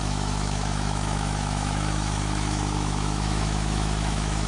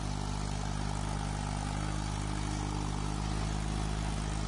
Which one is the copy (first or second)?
first